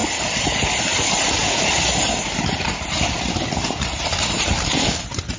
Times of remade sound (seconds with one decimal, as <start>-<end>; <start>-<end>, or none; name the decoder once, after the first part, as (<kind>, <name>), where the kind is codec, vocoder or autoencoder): none